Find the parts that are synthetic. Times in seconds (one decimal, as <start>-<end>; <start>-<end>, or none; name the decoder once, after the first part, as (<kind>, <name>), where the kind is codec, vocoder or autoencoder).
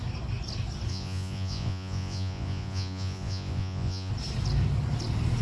0.9-4.1 (vocoder, Vocos)